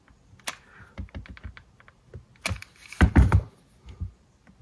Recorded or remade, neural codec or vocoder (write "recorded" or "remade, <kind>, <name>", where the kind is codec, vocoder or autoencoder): recorded